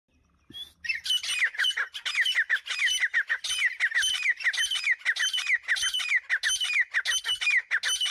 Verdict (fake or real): real